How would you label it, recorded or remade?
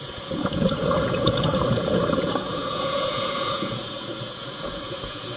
remade